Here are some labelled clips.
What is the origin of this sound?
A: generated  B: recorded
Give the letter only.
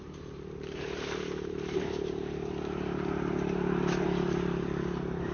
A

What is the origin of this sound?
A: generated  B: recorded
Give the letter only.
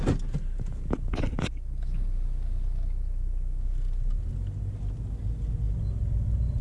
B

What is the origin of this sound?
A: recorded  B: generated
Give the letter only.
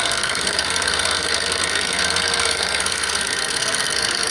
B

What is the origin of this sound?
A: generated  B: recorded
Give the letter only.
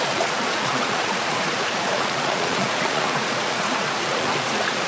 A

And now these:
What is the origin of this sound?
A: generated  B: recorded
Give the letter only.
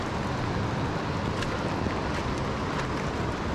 B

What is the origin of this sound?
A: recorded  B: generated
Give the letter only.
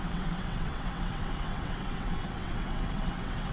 B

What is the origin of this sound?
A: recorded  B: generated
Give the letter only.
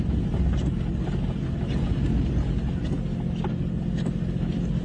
A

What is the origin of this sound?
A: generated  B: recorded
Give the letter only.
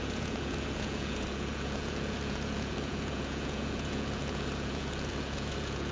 A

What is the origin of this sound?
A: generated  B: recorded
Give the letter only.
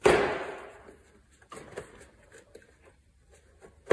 B